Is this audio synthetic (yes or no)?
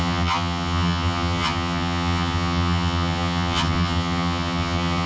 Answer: yes